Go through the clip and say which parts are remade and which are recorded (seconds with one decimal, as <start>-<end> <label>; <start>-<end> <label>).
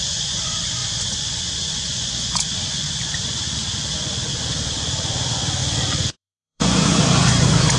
0.0-7.8 remade